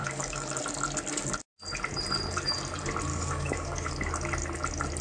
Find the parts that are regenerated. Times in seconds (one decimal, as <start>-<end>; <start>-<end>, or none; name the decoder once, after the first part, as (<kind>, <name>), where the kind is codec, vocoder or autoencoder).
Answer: 0.0-0.5 (codec, DAC); 3.1-3.9